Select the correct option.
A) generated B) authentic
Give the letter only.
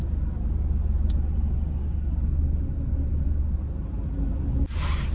B